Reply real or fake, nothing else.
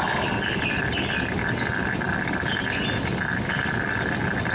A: real